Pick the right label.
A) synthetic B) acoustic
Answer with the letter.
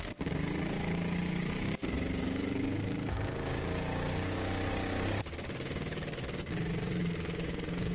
A